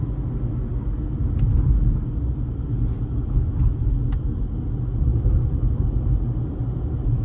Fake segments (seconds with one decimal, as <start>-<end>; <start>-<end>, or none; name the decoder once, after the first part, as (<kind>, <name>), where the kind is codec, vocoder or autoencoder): 5.1-7.2 (vocoder, BigVGAN v2)